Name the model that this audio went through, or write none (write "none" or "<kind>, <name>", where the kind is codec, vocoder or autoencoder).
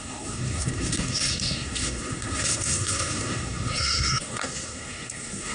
codec, SNAC